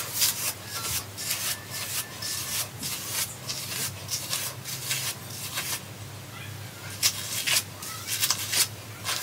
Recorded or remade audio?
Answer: recorded